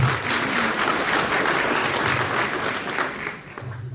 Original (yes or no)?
yes